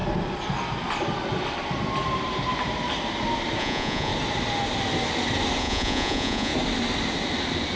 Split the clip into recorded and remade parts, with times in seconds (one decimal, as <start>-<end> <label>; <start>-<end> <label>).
0.0-3.6 recorded; 3.6-4.1 remade; 4.1-5.6 recorded; 5.6-6.5 remade; 6.5-7.8 recorded